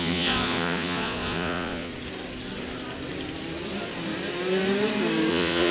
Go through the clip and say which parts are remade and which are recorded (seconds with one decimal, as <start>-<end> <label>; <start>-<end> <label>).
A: 0.0-1.9 remade; 1.9-5.3 recorded; 5.3-5.7 remade